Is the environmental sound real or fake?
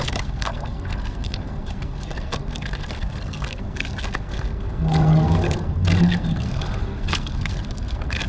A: fake